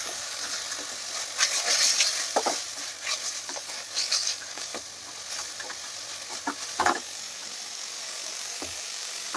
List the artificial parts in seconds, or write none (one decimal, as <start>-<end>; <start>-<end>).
0.0-0.6; 3.4-4.7; 6.8-9.4